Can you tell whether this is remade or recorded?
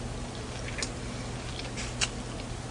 recorded